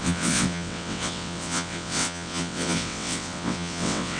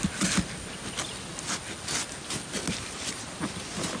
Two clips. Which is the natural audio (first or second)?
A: second